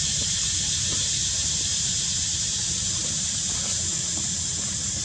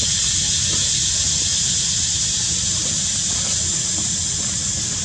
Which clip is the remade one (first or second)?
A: first